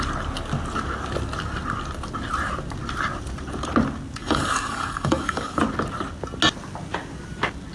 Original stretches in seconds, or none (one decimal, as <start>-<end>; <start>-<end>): 0.0-4.2; 5.6-7.7